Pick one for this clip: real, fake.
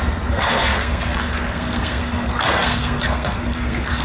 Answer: fake